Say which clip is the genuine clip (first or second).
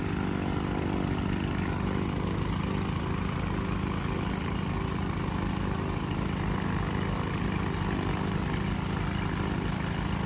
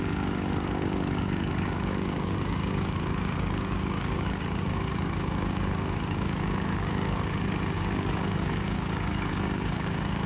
first